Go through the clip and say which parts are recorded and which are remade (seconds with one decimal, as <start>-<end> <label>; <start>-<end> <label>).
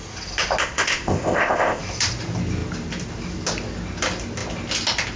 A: 0.0-0.6 recorded; 0.6-1.8 remade; 1.8-5.2 recorded